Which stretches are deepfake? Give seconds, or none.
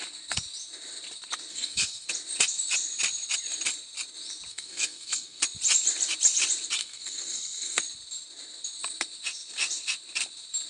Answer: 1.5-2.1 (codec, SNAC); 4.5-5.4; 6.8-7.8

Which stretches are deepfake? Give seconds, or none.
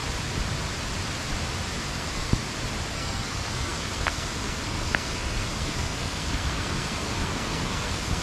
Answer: 1.8-2.4 (codec, SNAC); 2.9-8.2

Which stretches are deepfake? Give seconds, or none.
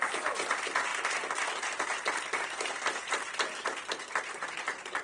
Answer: none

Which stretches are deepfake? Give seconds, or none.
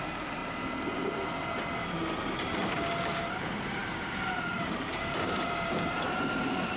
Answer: 0.0-0.4 (vocoder, BigVGAN v2); 3.3-6.8